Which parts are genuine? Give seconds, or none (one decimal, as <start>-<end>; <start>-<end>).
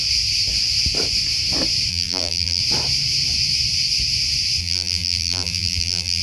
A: 0.0-1.9; 2.6-4.6